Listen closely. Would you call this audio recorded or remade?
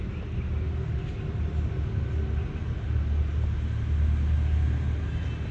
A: recorded